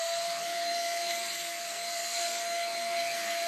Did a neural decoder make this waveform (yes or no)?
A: yes